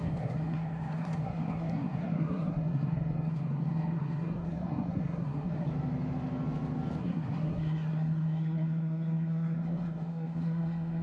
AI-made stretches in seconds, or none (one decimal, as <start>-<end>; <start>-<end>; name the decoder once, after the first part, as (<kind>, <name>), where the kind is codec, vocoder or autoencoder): 0.0-5.7 (codec, SNAC); 7.0-11.0